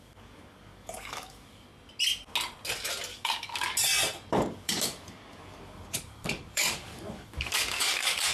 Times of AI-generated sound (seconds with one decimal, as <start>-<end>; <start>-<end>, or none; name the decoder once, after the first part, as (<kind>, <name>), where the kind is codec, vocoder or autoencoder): 0.0-1.7 (codec, DAC); 3.1-3.7; 4.3-8.3